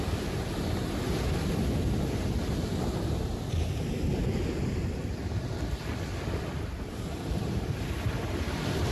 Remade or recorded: recorded